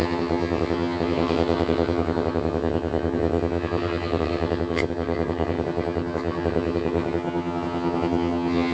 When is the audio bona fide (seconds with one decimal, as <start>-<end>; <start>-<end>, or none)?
none